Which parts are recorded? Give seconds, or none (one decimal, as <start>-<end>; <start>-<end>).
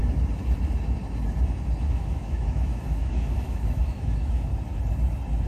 0.0-1.8; 4.5-5.5